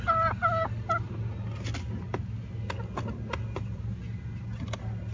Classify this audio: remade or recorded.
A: recorded